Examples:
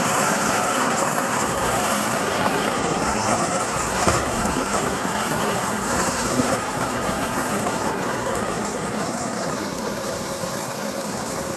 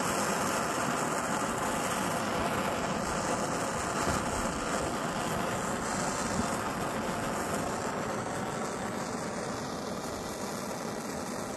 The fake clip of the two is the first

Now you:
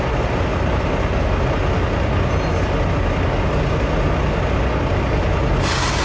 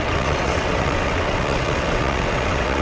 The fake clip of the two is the second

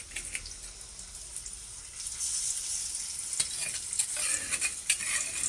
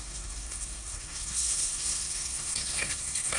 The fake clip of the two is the second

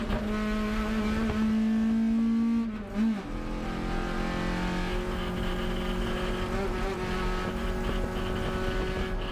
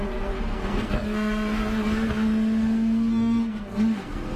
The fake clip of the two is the second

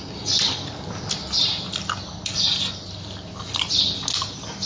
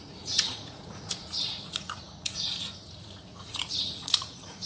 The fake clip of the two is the second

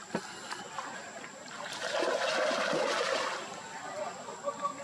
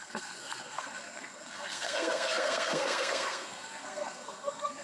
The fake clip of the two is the second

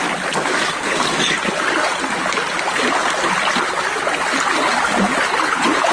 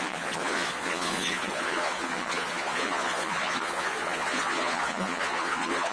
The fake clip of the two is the second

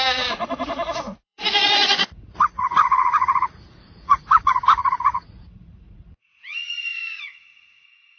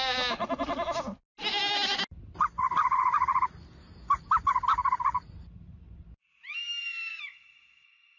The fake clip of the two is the first